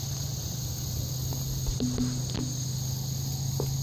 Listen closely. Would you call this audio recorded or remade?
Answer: recorded